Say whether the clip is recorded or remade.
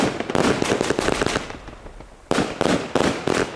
recorded